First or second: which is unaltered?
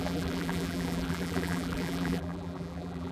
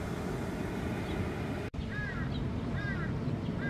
second